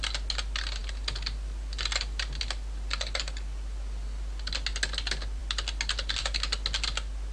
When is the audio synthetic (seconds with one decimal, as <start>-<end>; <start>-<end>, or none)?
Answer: none